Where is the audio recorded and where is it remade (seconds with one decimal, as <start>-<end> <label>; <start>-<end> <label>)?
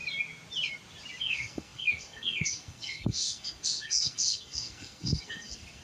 0.0-1.2 recorded; 1.2-5.8 remade